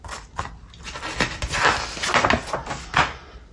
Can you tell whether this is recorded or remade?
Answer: recorded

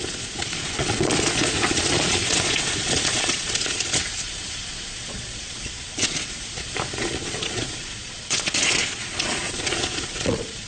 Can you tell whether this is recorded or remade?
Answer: remade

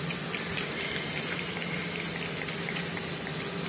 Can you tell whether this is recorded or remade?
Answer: recorded